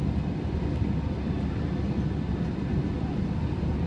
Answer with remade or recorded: recorded